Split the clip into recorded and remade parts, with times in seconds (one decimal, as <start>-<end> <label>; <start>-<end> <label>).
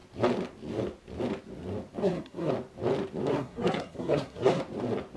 0.0-2.0 recorded; 2.0-2.5 remade; 2.5-3.3 recorded; 3.3-4.6 remade; 4.6-5.2 recorded